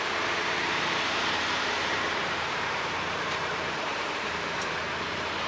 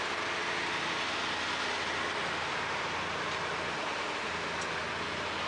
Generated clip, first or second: first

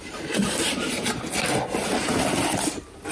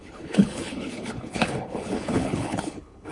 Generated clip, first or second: second